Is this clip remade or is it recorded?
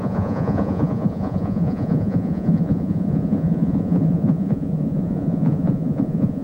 remade